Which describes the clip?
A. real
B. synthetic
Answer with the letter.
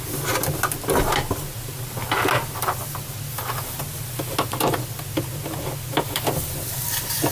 A